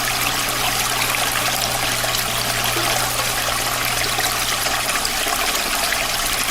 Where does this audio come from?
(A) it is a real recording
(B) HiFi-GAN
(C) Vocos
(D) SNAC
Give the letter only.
A